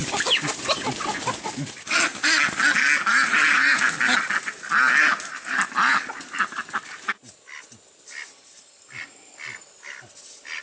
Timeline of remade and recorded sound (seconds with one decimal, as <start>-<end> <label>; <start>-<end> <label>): 0.0-10.6 recorded